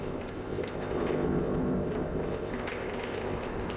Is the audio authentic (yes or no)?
no